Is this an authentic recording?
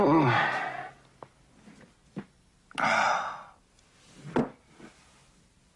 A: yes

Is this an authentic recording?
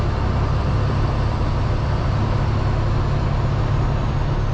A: yes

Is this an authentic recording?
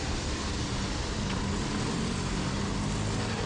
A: yes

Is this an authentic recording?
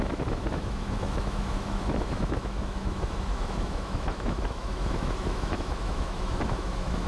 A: no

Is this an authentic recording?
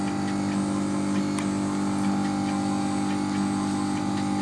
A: yes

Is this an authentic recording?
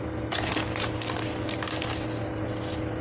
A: yes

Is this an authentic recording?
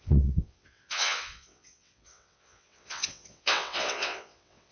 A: no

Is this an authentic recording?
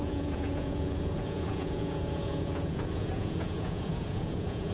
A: no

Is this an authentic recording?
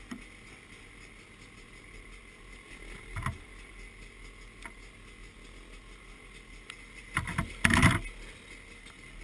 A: yes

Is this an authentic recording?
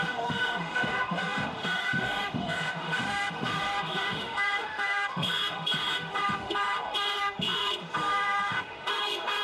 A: no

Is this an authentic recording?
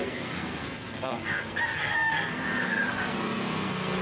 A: no